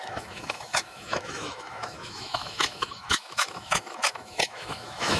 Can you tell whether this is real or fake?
fake